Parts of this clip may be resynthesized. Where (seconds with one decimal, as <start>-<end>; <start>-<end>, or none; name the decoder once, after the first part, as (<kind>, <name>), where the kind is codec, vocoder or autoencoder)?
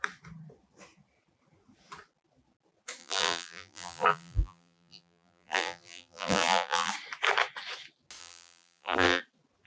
3.0-6.9 (vocoder, BigVGAN v2); 8.2-9.2